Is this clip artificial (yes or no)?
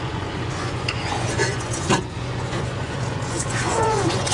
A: yes